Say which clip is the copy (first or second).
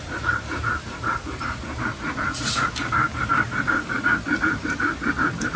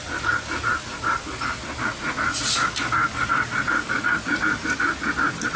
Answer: first